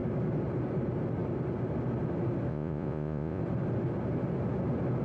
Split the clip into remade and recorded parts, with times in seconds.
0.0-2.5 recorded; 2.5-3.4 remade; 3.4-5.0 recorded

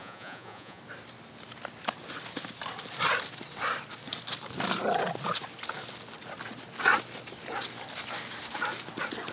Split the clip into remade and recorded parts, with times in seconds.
0.0-0.8 remade; 0.8-9.3 recorded

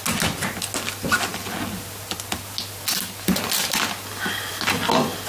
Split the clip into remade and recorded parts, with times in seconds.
0.0-5.3 recorded

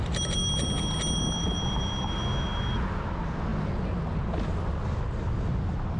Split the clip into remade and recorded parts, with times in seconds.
0.0-6.0 recorded

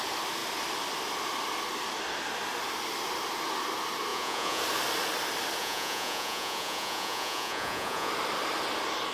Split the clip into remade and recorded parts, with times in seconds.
0.0-4.1 recorded; 4.1-4.6 remade; 4.6-5.6 recorded; 5.6-8.1 remade; 8.1-9.1 recorded

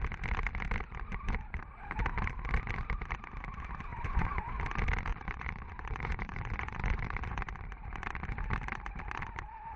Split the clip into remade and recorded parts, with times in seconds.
0.0-3.9 recorded; 3.9-4.6 remade; 4.6-5.1 recorded; 5.1-7.5 remade; 7.5-9.8 recorded